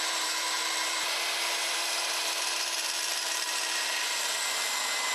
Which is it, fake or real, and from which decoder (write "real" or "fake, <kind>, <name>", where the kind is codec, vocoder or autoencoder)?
fake, vocoder, BigVGAN v2